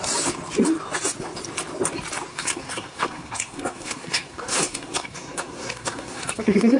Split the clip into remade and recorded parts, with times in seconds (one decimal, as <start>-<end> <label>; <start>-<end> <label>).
0.0-2.3 recorded; 2.3-6.8 remade